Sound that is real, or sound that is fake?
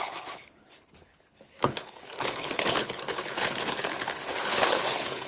fake